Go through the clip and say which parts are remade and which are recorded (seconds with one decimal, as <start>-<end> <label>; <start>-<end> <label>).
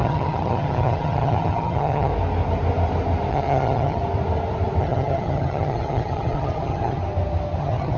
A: 0.0-2.1 remade; 2.1-3.3 recorded; 3.3-4.0 remade; 4.0-4.8 recorded; 4.8-7.0 remade; 7.0-7.6 recorded; 7.6-8.0 remade